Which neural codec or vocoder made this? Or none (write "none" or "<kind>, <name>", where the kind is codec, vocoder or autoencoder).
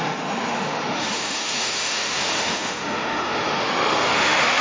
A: autoencoder, DAC-VAE